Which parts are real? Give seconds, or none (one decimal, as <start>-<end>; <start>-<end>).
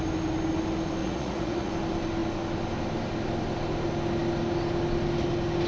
0.0-1.0; 1.7-5.7